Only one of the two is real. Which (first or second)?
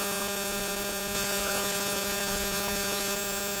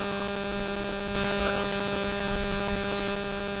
second